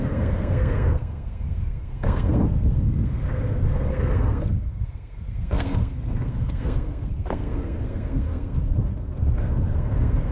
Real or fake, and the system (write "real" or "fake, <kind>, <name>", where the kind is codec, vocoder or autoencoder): fake, codec, SNAC